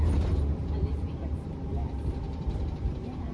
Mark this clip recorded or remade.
remade